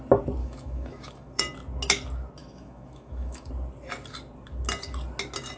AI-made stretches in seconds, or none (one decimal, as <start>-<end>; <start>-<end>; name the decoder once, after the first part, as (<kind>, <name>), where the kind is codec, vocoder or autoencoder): 0.4-1.4 (autoencoder, DAC-VAE); 2.4-3.5